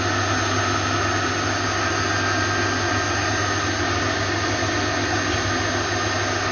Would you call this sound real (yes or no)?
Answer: yes